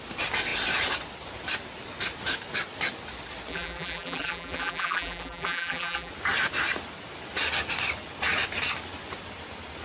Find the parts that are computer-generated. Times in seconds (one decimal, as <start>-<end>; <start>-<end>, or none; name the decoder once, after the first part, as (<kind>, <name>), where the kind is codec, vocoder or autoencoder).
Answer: 3.5-6.1 (vocoder, BigVGAN v2)

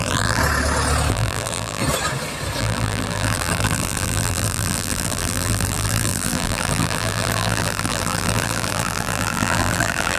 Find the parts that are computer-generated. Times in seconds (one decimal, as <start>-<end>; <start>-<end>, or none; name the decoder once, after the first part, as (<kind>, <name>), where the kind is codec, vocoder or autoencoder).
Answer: 0.0-0.4 (vocoder, BigVGAN v2); 1.1-1.8; 2.6-10.2